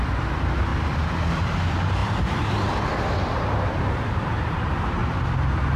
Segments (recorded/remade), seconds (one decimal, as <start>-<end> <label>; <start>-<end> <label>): 0.0-0.7 remade; 0.7-1.3 recorded; 1.3-5.0 remade; 5.0-5.8 recorded